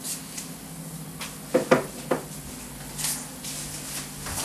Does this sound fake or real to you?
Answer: real